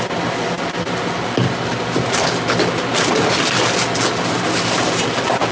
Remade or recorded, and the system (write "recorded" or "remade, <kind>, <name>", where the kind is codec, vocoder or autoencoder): recorded